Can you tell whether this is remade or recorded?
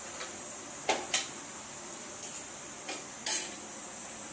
recorded